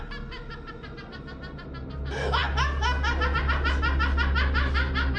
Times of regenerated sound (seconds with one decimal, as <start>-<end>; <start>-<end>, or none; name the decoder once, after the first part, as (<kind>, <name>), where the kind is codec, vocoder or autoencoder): none